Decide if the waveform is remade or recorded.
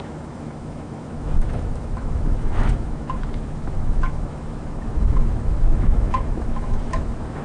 remade